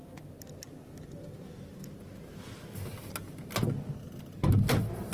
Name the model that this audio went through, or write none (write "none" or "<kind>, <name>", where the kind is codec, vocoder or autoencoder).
none